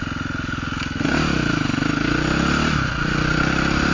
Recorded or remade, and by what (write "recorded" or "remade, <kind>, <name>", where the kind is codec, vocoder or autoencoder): recorded